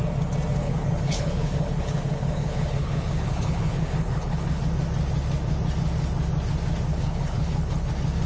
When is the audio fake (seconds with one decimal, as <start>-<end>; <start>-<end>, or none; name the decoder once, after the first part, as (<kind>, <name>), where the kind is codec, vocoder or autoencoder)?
0.6-4.6 (codec, HILCodec); 6.9-7.9